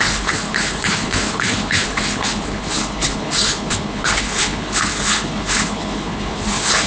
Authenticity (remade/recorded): remade